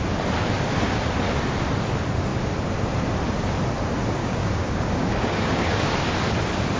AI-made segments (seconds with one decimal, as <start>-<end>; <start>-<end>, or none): 4.2-5.9